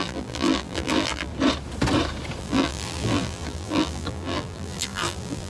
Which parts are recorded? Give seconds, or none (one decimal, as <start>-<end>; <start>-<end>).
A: 1.3-2.4